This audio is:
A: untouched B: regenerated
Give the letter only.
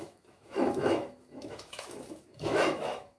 B